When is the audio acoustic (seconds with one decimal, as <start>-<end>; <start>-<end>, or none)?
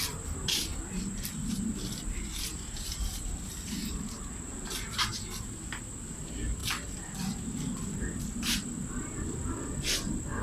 3.8-4.5